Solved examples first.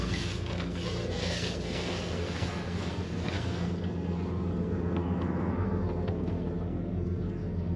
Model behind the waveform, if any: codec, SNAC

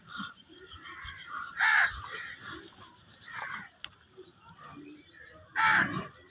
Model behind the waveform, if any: none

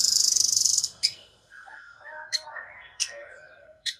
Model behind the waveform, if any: codec, SNAC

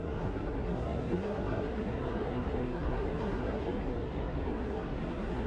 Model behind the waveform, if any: codec, SNAC